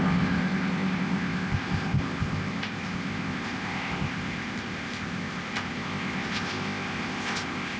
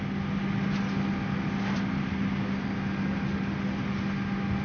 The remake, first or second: first